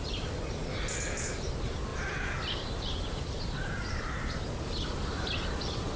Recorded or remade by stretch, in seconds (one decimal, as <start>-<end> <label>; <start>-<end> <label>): 0.0-6.0 recorded